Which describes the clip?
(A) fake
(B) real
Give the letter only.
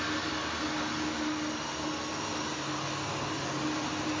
B